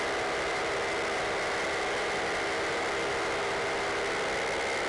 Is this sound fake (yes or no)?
no